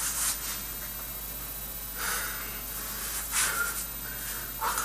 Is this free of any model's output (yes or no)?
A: yes